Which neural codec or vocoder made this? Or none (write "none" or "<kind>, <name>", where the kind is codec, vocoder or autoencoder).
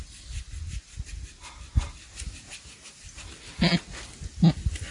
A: none